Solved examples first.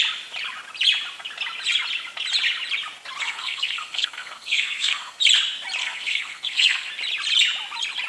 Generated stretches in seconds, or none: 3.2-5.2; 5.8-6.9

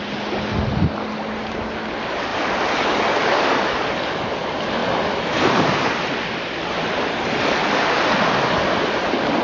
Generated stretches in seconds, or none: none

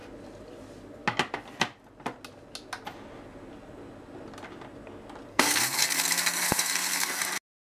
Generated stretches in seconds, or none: 5.3-7.2

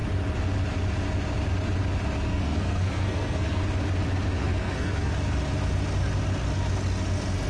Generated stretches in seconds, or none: 2.3-3.6; 4.4-5.1

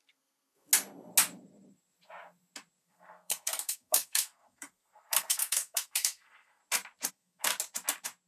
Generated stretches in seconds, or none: 0.0-0.7; 2.8-6.6; 7.1-7.5

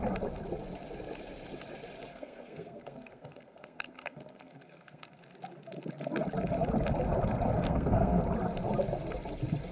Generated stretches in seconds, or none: 2.1-5.2; 7.6-8.2

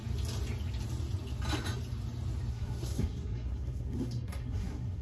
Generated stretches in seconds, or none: 2.5-5.0

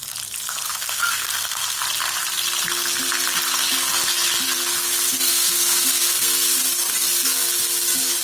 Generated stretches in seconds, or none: 0.6-1.8; 5.3-6.6